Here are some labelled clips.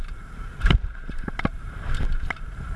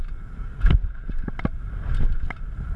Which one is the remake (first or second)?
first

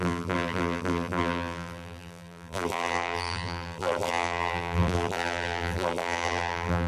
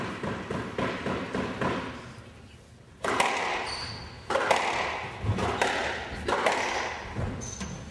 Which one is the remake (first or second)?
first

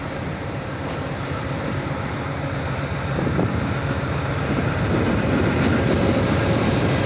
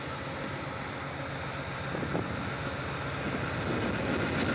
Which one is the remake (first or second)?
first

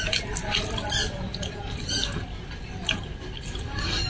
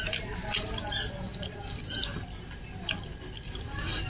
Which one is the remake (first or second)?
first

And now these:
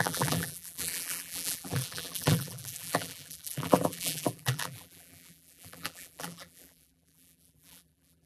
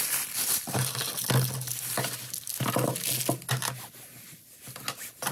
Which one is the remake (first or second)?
first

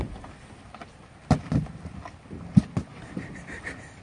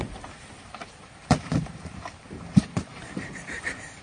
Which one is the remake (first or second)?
second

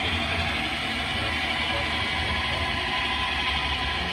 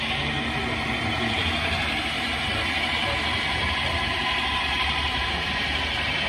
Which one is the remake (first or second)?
second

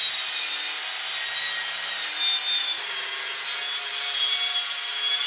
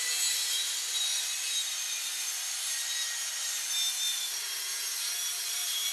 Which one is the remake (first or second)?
second